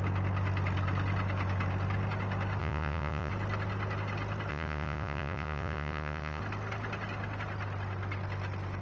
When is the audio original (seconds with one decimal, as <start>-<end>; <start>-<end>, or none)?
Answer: 0.0-2.6; 3.3-4.5; 6.4-8.8